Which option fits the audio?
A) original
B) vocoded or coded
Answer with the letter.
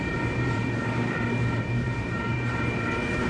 B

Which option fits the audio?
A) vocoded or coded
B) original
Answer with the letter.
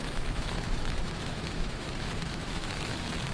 A